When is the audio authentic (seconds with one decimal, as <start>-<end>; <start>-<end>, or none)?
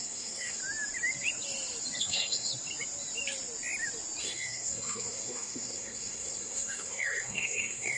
0.6-2.0; 2.5-4.2